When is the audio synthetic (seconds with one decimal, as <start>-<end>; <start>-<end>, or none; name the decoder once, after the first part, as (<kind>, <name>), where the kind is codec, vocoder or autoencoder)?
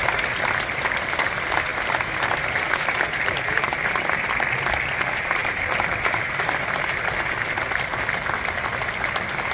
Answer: 1.7-3.9 (vocoder, BigVGAN v2); 5.4-7.0